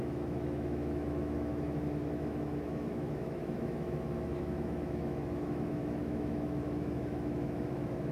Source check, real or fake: fake